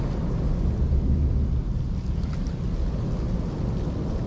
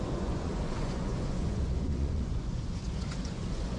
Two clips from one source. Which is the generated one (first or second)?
second